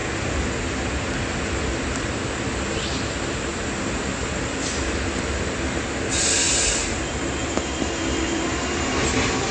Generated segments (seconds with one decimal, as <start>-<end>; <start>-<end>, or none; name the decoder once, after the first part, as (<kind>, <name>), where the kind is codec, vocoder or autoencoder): none